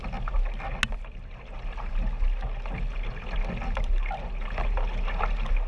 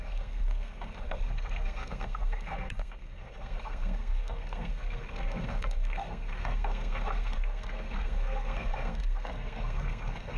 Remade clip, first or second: second